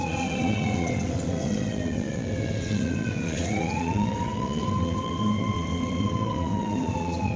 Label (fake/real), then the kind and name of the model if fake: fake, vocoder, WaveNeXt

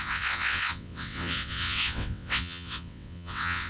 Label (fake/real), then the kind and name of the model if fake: fake, vocoder, WaveNeXt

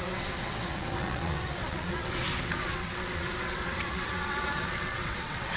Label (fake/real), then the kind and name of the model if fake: fake, vocoder, WaveNeXt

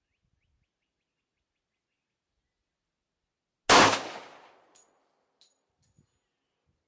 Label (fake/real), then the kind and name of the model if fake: real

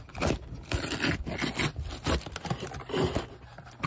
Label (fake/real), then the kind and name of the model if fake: real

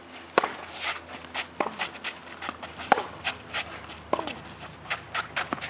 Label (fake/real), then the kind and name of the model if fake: real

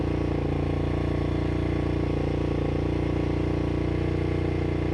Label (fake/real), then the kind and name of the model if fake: real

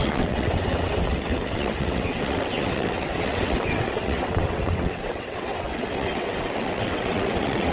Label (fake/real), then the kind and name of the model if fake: fake, vocoder, WaveNeXt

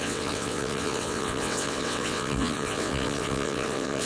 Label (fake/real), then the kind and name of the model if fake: fake, vocoder, WaveNeXt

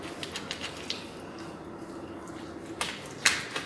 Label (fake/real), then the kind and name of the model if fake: real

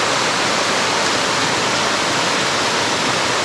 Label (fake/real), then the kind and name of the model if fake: real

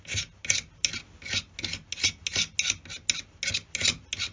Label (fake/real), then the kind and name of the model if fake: real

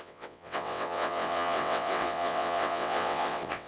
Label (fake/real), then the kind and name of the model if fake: fake, vocoder, WaveNeXt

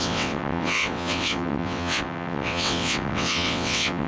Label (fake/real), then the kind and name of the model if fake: fake, vocoder, WaveNeXt